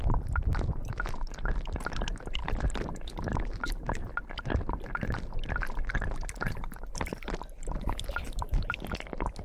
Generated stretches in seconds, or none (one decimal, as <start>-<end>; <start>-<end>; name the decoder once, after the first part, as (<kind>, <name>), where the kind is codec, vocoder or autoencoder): none